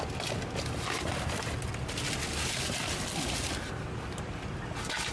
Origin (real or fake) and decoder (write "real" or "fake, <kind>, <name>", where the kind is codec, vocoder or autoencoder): real